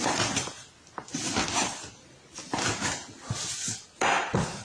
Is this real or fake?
real